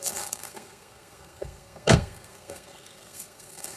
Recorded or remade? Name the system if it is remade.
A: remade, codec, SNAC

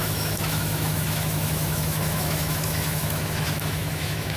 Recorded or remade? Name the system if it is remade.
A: remade, autoencoder, DAC-VAE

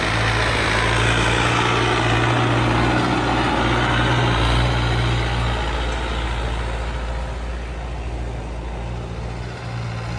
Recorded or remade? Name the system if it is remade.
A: recorded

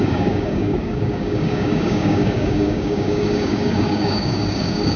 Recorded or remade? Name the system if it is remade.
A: remade, codec, DAC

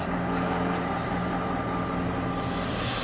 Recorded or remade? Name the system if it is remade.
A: recorded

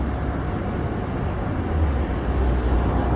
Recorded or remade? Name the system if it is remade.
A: recorded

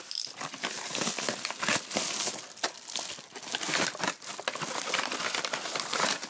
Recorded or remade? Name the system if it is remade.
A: recorded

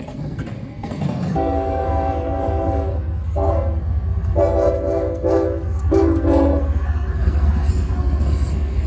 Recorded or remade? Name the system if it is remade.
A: remade, codec, SNAC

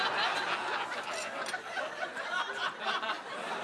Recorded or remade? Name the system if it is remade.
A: recorded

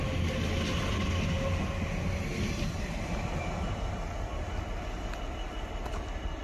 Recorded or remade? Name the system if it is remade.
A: recorded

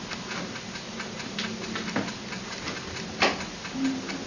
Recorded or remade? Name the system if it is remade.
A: recorded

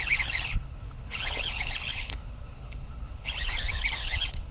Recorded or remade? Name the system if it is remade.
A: remade, codec, HILCodec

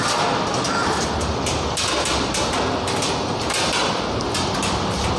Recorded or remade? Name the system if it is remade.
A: recorded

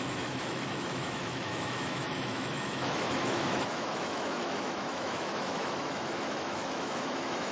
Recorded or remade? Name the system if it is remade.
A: remade, autoencoder, DAC-VAE